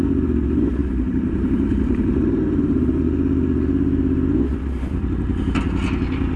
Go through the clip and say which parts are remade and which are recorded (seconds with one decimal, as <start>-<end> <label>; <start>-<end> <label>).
0.0-0.8 recorded; 0.8-3.0 remade; 3.0-6.4 recorded